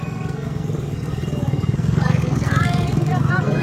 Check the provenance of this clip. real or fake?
fake